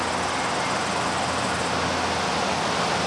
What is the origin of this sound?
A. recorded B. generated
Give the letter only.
A